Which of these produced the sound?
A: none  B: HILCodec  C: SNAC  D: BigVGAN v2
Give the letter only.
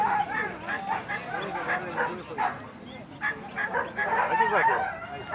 A